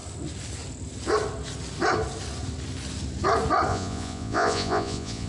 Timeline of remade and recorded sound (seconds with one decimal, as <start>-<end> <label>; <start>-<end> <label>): 0.0-3.7 recorded; 3.7-5.3 remade